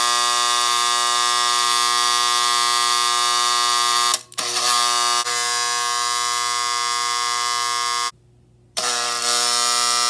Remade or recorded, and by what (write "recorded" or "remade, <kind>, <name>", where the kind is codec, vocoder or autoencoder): recorded